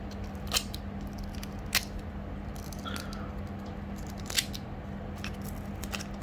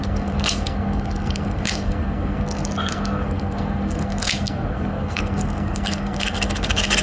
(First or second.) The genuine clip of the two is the first